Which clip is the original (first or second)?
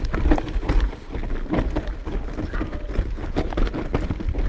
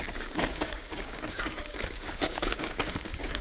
first